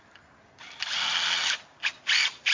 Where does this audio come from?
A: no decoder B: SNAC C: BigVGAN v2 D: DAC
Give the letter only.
A